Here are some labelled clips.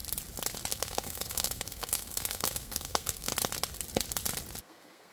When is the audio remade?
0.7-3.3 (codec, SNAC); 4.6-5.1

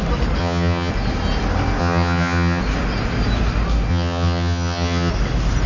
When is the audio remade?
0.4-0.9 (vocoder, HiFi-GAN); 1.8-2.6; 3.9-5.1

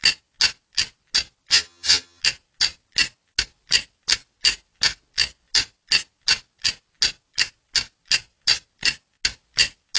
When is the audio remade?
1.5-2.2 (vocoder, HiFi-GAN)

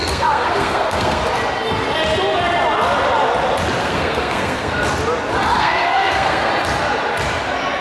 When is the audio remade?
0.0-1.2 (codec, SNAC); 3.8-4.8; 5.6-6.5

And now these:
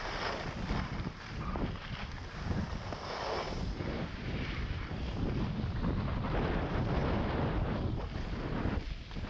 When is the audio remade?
none